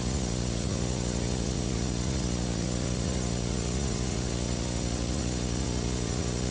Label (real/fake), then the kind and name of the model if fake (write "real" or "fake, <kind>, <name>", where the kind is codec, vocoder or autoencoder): fake, vocoder, Vocos